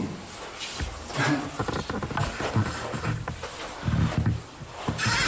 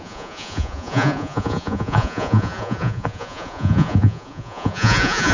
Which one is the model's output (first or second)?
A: second